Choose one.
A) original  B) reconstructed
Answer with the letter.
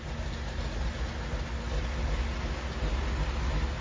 A